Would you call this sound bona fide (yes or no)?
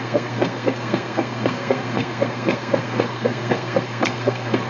no